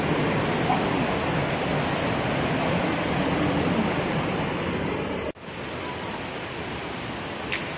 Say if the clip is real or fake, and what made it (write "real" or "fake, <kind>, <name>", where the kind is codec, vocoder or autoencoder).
real